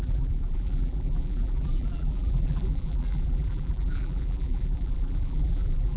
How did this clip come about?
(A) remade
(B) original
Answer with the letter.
A